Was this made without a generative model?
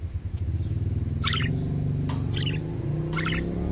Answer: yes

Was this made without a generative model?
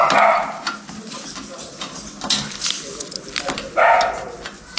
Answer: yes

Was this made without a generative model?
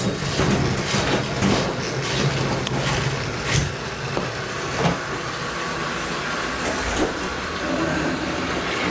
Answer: yes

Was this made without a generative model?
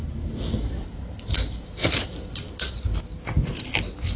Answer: yes